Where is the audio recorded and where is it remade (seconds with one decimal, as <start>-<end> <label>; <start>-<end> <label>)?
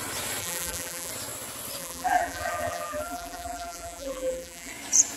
0.0-0.4 recorded; 0.4-1.1 remade; 1.1-1.8 recorded; 1.8-4.7 remade; 4.7-5.2 recorded